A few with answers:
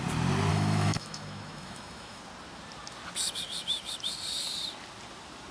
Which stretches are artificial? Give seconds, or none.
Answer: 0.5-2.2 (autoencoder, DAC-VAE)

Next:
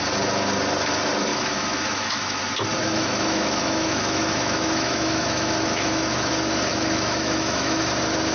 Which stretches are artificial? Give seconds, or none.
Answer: 1.3-2.4 (autoencoder, DAC-VAE); 2.8-6.3; 6.7-7.8

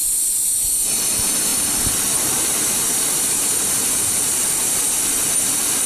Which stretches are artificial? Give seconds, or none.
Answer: none

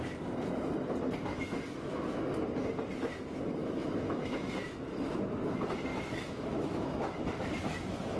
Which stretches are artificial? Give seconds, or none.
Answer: 1.3-2.3 (autoencoder, DAC-VAE); 3.6-4.5; 5.9-8.2

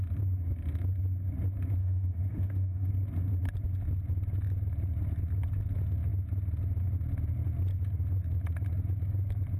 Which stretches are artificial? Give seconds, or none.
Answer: 1.8-2.9 (autoencoder, DAC-VAE)

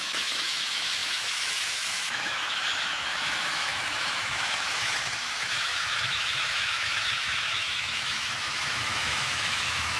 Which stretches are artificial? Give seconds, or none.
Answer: 0.0-10.0 (autoencoder, DAC-VAE)

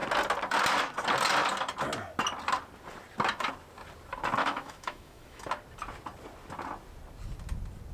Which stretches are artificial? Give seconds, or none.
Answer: 4.4-5.4 (autoencoder, DAC-VAE)

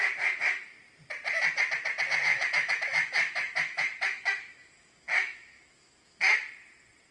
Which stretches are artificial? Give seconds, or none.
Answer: 2.3-6.3 (autoencoder, DAC-VAE)